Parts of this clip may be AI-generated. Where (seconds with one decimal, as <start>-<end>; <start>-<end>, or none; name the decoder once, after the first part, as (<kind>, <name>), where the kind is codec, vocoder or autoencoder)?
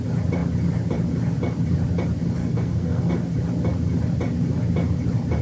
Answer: 2.4-3.1 (codec, SNAC)